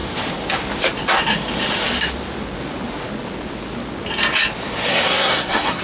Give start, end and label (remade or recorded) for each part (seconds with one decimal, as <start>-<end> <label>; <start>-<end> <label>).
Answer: 0.0-4.9 recorded; 4.9-5.8 remade